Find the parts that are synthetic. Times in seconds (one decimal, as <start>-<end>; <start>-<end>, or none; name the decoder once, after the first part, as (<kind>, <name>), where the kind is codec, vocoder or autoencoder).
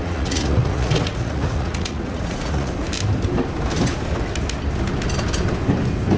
0.0-2.7 (vocoder, Vocos)